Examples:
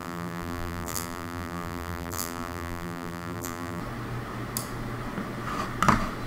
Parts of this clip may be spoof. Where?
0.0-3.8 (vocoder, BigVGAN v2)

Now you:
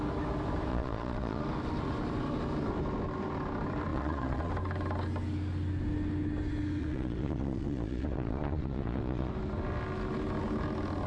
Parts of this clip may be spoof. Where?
0.7-1.4 (vocoder, Vocos); 3.9-4.5; 6.8-9.3